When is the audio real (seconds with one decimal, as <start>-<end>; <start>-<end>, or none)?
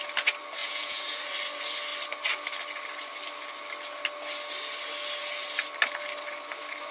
0.0-0.6; 1.2-6.9